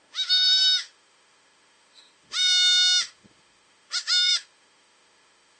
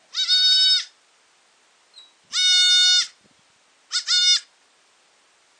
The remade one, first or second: first